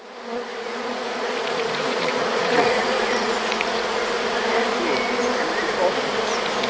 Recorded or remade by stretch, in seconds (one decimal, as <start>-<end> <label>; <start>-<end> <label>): 0.0-0.5 recorded; 0.5-4.1 remade; 4.1-6.7 recorded